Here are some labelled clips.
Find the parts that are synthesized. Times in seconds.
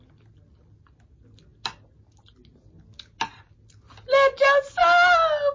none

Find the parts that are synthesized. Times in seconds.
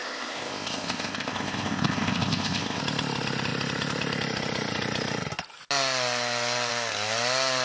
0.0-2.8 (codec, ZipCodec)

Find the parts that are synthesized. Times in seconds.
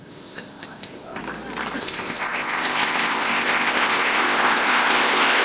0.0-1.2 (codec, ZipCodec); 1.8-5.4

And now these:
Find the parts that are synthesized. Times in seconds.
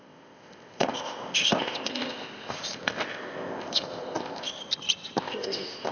0.0-4.6 (codec, ZipCodec); 5.2-5.9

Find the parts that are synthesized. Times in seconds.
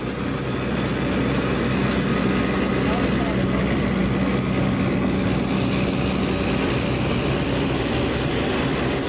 none